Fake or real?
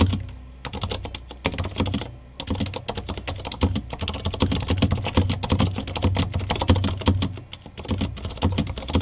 real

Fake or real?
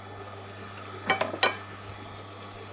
real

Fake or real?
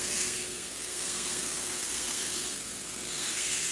fake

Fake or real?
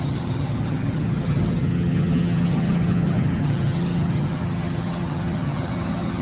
fake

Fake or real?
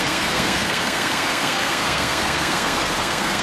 fake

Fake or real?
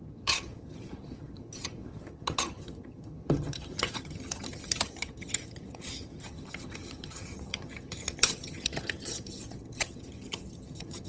fake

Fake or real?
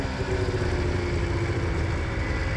real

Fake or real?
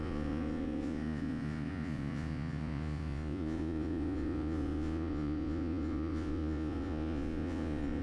fake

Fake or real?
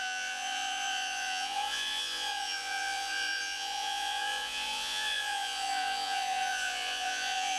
fake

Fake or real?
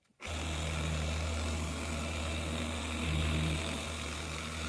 real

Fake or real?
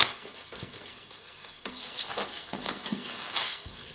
fake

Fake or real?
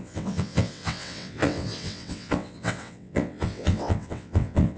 fake